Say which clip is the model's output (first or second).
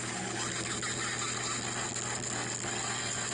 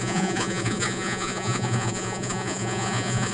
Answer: second